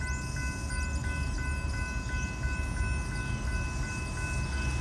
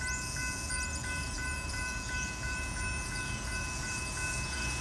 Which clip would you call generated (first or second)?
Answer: second